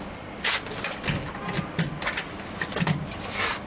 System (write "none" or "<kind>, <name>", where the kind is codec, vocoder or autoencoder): none